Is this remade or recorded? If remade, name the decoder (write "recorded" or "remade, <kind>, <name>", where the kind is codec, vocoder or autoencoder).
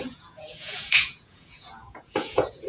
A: remade, vocoder, Vocos